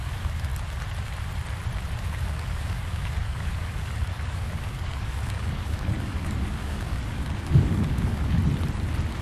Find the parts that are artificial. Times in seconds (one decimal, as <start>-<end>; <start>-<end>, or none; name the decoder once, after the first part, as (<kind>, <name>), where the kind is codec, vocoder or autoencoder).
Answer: 0.0-0.5 (codec, DAC); 2.1-8.4